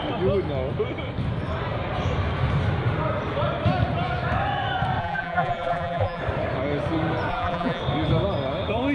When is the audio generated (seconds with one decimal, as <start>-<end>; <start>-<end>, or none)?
5.0-6.2; 7.3-7.8